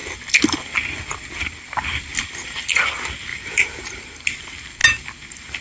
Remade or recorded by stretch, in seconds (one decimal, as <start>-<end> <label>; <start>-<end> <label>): 0.0-2.1 recorded; 2.1-2.8 remade; 2.8-3.3 recorded; 3.3-4.0 remade; 4.0-5.6 recorded